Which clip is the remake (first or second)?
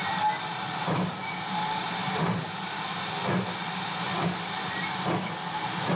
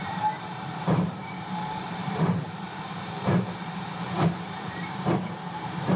second